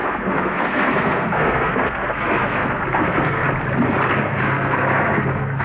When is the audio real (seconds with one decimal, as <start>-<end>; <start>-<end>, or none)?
3.4-4.2